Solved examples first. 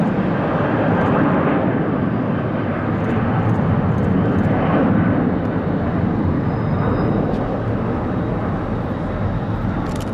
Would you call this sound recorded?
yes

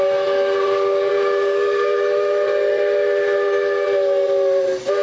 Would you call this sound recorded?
yes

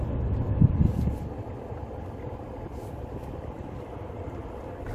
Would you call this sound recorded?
yes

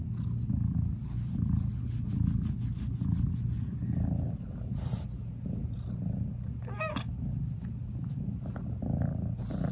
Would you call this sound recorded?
yes